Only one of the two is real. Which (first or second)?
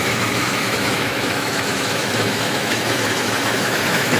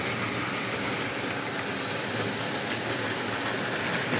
second